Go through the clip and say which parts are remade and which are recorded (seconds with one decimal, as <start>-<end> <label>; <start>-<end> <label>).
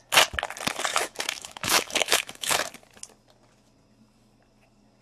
0.0-0.9 recorded; 0.9-2.7 remade; 2.7-5.0 recorded